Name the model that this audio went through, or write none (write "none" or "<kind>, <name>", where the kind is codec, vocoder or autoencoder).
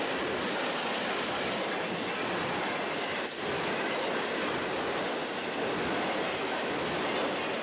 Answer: none